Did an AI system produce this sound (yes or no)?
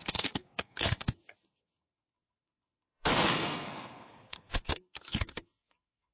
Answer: yes